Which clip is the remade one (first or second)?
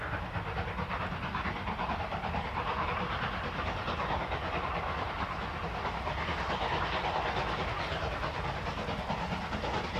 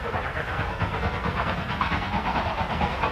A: second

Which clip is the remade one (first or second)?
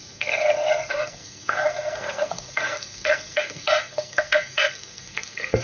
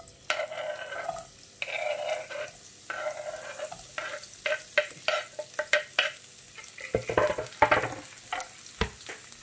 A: first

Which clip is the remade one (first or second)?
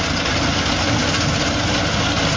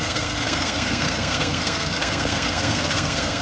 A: second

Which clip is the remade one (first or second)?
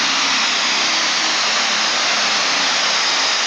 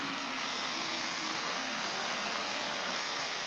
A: second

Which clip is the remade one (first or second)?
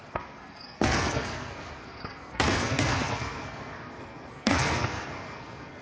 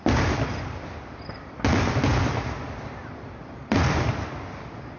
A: first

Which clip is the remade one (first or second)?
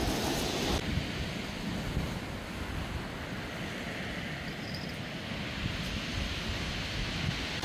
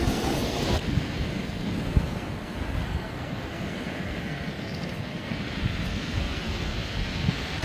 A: second